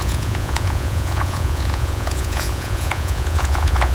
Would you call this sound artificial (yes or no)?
yes